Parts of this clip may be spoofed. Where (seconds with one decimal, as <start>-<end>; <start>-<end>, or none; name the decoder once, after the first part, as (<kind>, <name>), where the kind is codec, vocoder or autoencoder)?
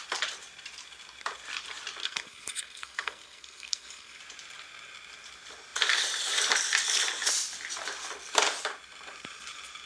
2.0-4.2 (codec, SNAC)